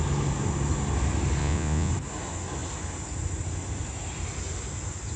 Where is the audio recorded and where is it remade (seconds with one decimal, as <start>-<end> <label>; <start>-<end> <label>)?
0.0-1.4 recorded; 1.4-1.9 remade; 1.9-5.2 recorded